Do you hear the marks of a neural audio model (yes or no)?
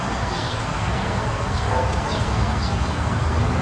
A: yes